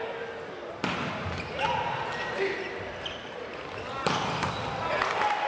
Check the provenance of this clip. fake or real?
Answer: real